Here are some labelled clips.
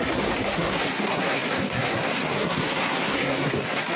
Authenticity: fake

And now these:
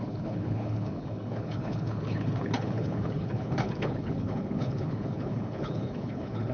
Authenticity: fake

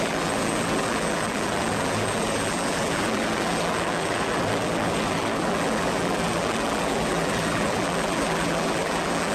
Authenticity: fake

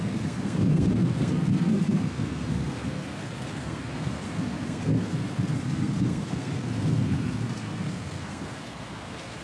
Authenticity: fake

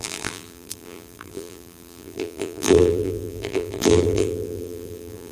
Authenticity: fake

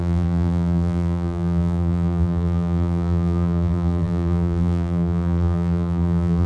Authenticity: fake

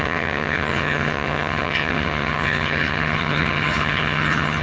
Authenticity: fake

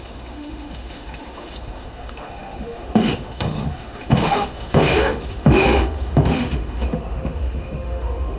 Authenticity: fake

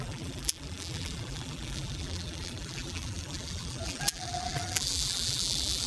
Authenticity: fake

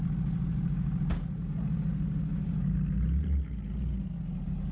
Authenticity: real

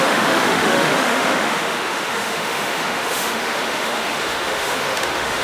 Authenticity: fake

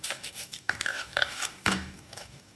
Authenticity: fake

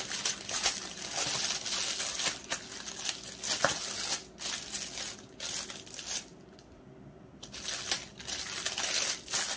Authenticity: real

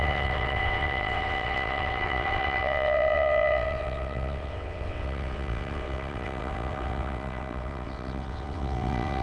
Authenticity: fake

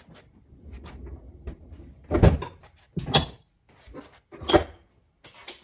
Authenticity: real